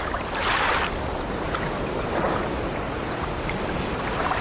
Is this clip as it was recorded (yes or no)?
no